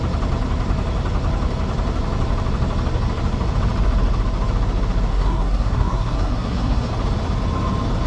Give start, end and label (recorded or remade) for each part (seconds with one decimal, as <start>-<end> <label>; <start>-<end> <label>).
0.0-5.1 recorded; 5.1-6.9 remade; 6.9-8.1 recorded